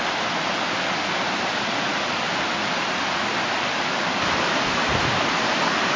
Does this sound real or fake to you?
real